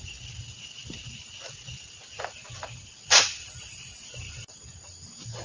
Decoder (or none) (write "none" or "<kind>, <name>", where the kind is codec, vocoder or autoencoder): none